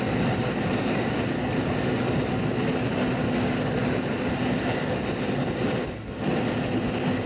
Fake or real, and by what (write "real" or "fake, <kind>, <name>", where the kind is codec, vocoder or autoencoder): real